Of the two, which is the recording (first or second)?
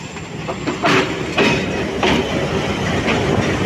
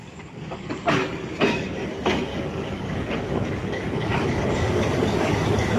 first